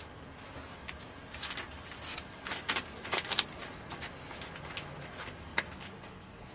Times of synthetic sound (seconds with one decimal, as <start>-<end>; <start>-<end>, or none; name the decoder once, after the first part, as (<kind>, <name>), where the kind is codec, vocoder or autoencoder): 5.5-6.5 (codec, DAC)